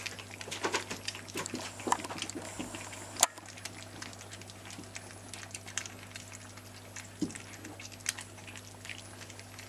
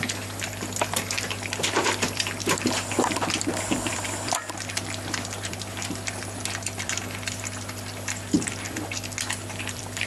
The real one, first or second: first